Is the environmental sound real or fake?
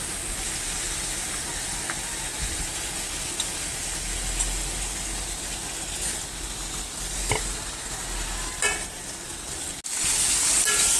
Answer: real